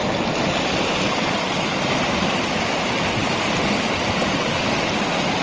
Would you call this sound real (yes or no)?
yes